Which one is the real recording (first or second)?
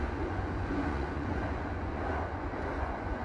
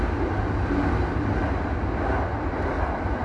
second